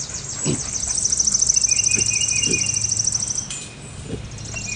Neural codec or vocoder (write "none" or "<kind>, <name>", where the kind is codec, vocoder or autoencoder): none